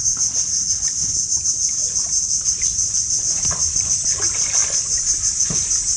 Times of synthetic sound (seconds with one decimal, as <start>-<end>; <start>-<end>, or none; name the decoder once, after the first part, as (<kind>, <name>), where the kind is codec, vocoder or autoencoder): 1.8-3.8 (vocoder, BigVGAN v2)